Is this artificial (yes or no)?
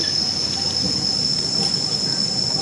no